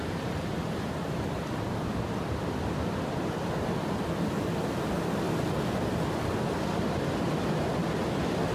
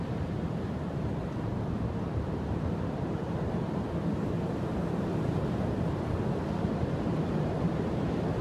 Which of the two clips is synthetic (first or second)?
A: second